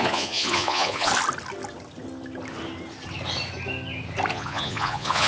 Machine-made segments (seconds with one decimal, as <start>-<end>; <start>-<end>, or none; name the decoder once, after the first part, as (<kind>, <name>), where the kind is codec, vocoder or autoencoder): 0.0-1.1 (vocoder, Vocos); 4.3-5.3